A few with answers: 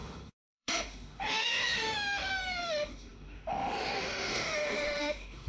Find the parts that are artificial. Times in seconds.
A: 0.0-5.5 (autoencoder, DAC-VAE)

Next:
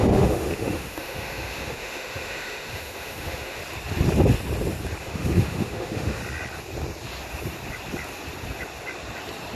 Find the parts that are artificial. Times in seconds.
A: 0.0-3.6 (autoencoder, DAC-VAE); 5.0-6.2

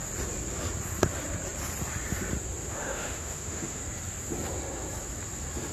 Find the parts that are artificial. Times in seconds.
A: 2.7-3.8 (autoencoder, DAC-VAE)

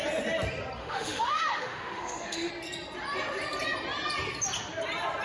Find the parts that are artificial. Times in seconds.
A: 0.8-2.5 (autoencoder, DAC-VAE)